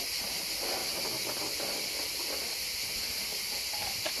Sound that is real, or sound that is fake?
real